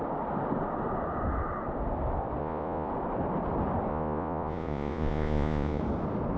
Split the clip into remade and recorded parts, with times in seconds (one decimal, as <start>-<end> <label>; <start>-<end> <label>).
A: 0.0-2.4 recorded; 2.4-2.9 remade; 2.9-3.9 recorded; 3.9-5.8 remade; 5.8-6.4 recorded